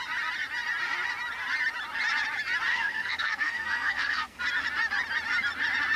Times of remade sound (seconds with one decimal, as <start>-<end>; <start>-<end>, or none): 2.7-4.4